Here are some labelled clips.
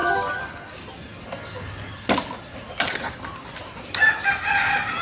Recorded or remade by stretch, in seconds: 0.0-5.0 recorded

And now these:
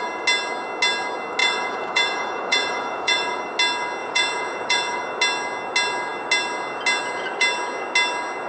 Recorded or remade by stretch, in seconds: 0.0-1.4 recorded; 1.4-3.4 remade; 3.4-4.0 recorded; 4.0-5.0 remade; 5.0-8.5 recorded

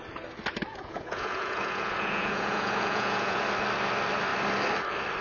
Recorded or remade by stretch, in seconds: 0.0-0.7 recorded; 0.7-3.4 remade; 3.4-5.2 recorded

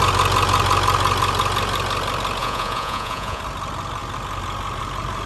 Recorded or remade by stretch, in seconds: 0.0-2.4 recorded; 2.4-3.4 remade; 3.4-5.3 recorded

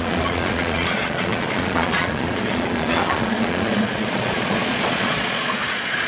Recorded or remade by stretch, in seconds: 0.0-6.1 remade

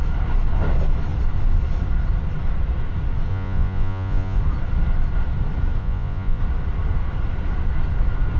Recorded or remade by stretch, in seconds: 0.0-3.3 recorded; 3.3-4.4 remade; 4.4-5.8 recorded; 5.8-6.4 remade; 6.4-8.4 recorded

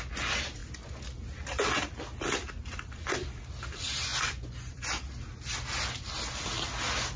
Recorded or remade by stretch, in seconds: 0.0-4.1 recorded; 4.1-5.0 remade; 5.0-7.2 recorded

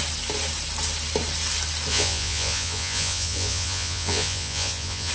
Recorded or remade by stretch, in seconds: 0.0-1.9 recorded; 1.9-5.1 remade